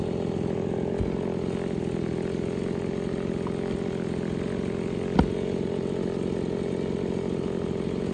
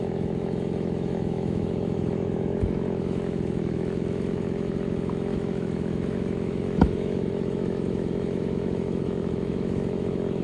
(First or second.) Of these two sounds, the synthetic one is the second